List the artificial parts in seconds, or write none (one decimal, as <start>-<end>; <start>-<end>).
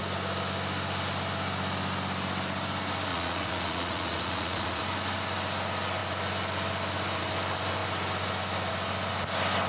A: 3.1-4.8